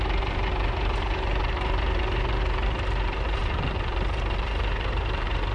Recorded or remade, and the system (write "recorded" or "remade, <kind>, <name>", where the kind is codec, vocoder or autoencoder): remade, vocoder, BigVGAN v2